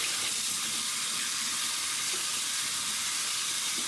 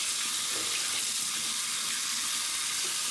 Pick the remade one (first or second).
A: first